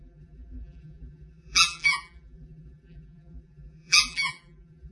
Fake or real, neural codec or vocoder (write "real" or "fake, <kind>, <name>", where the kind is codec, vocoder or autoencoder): fake, vocoder, BigVGAN v2